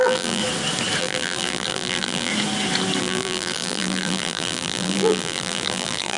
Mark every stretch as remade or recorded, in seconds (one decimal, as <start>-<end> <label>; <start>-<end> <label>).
0.0-0.4 remade; 0.4-1.0 recorded; 1.0-2.3 remade; 2.3-3.0 recorded; 3.0-6.2 remade